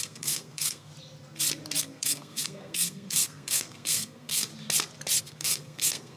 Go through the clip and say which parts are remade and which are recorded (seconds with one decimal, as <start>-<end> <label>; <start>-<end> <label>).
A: 0.0-0.9 remade; 0.9-1.8 recorded; 1.8-4.5 remade; 4.5-5.2 recorded; 5.2-6.2 remade